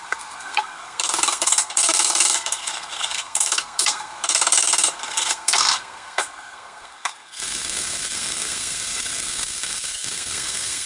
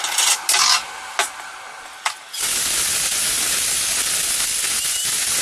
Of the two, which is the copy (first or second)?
first